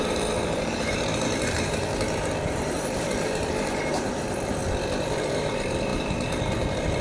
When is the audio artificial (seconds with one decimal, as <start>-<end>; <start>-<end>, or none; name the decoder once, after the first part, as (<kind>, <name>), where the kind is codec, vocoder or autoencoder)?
0.0-4.6 (vocoder, BigVGAN v2); 5.3-7.0

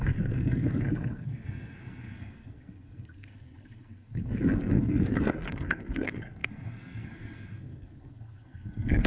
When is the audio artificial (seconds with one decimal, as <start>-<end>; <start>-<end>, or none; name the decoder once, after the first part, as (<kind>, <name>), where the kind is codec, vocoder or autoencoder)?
0.0-9.1 (codec, SNAC)

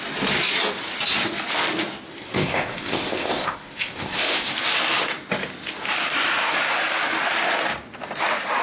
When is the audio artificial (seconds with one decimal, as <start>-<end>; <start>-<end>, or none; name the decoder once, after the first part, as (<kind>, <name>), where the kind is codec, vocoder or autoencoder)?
2.1-4.5 (codec, ZipCodec)

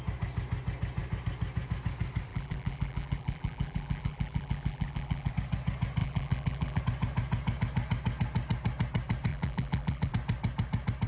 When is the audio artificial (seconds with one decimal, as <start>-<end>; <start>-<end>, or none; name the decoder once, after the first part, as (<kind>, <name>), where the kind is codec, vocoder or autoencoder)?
2.3-5.3 (vocoder, BigVGAN v2); 6.0-6.8; 9.3-10.1

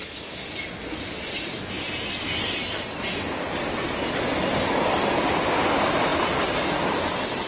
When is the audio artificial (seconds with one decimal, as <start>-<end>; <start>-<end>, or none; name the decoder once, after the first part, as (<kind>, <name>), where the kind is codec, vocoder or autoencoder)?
none

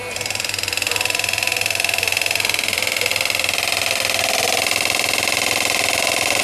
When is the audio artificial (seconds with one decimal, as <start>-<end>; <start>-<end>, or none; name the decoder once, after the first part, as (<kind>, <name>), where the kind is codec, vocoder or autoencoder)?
0.0-3.1 (vocoder, BigVGAN v2)

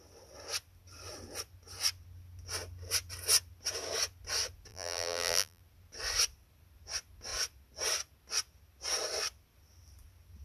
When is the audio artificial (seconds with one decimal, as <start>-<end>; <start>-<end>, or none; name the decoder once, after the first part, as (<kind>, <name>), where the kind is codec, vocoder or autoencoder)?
4.7-5.6 (vocoder, BigVGAN v2)

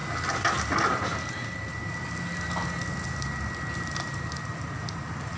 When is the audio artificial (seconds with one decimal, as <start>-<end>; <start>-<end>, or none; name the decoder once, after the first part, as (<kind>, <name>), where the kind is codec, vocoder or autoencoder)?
none